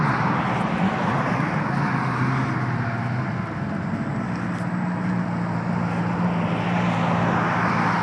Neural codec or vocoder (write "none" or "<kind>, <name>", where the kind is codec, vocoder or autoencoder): none